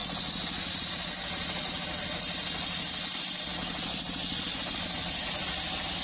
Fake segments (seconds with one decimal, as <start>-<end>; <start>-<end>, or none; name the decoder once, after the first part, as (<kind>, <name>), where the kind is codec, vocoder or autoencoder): none